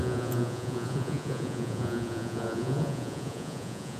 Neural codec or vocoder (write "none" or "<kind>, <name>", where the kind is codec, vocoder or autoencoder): vocoder, Vocos